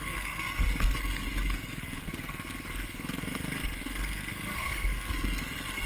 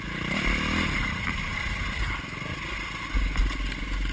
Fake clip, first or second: first